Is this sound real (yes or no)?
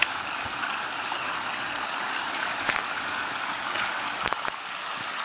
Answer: no